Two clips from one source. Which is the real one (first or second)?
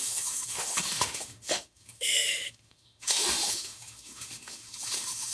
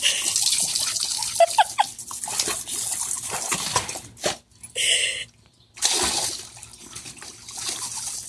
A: second